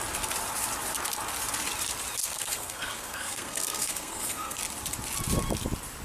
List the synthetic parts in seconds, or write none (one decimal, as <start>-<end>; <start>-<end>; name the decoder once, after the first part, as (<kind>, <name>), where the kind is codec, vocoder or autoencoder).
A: 2.2-4.6 (codec, SNAC)